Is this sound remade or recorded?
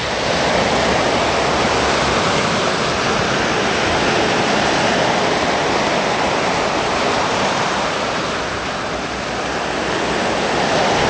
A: recorded